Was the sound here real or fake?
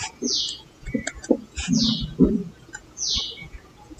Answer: fake